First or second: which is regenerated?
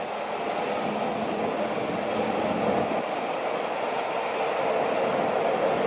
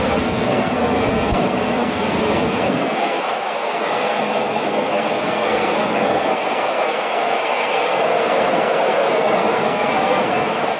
second